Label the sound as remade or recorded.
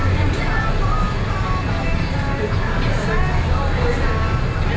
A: recorded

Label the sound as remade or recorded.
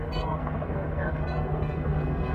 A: remade